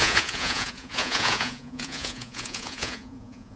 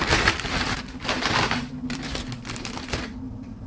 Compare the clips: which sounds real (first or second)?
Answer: second